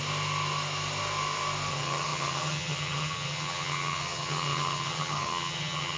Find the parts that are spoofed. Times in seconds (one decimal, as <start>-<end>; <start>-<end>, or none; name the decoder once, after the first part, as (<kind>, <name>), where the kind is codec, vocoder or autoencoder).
1.7-6.0 (vocoder, HiFi-GAN)